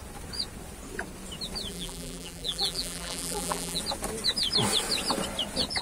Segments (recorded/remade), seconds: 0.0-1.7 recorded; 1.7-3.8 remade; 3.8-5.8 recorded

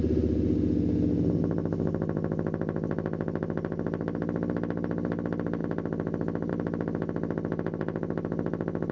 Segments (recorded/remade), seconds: 0.0-8.9 recorded

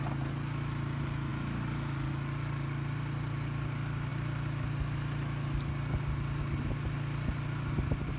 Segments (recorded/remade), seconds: 0.0-8.2 recorded

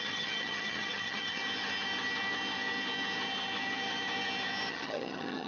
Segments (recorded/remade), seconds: 0.0-1.4 remade; 1.4-4.7 recorded; 4.7-5.5 remade

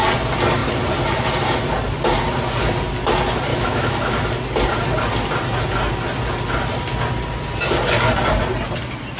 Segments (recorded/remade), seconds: 0.0-3.5 recorded; 3.5-4.2 remade; 4.2-9.2 recorded

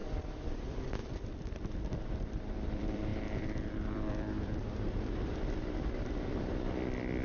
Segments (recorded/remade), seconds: 0.0-1.0 remade; 1.0-2.0 recorded; 2.0-7.2 remade